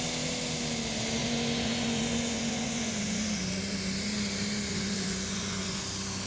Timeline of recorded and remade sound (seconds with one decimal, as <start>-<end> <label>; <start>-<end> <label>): 0.0-1.2 recorded; 1.2-3.4 remade; 3.4-4.7 recorded; 4.7-5.8 remade; 5.8-6.3 recorded